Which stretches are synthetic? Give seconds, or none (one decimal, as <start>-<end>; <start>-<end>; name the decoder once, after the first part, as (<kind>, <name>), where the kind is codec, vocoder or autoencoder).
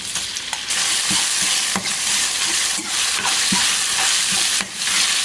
2.6-4.8 (vocoder, BigVGAN v2)